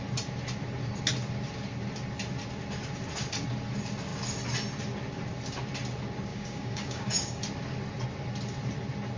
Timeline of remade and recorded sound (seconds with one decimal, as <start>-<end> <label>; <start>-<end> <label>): 0.0-6.3 recorded; 6.3-7.4 remade; 7.4-9.2 recorded